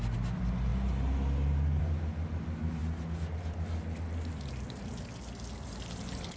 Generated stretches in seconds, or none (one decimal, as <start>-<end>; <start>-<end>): none